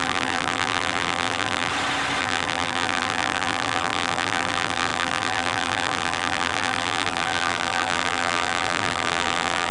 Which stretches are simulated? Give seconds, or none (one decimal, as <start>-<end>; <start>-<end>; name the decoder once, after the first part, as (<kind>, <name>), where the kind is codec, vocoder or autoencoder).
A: 0.0-1.7 (vocoder, BigVGAN v2); 2.2-9.7